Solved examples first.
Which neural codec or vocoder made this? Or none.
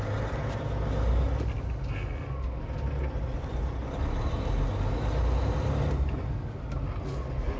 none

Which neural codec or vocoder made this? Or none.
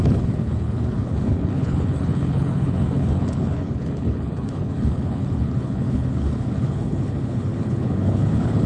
codec, HILCodec